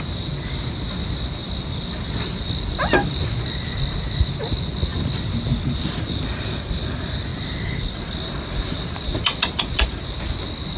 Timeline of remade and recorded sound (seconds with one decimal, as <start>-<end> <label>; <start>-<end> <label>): 0.0-1.4 recorded; 1.4-3.2 remade; 3.2-4.9 recorded; 4.9-6.7 remade; 6.7-7.3 recorded; 7.3-8.8 remade; 8.8-10.8 recorded